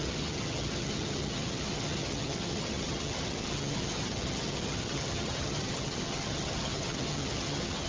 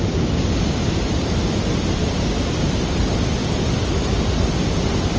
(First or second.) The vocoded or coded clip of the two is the first